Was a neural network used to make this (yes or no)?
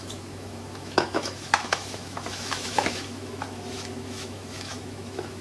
yes